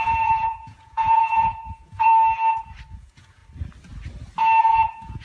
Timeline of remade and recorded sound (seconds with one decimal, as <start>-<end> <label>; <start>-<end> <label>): 0.0-2.1 remade; 2.1-2.9 recorded; 2.9-3.4 remade; 3.4-4.6 recorded; 4.6-5.2 remade